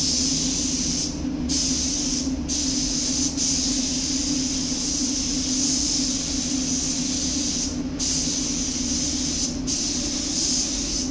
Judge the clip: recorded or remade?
recorded